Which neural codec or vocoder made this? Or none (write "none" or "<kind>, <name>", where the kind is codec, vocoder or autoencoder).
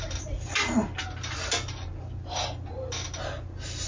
none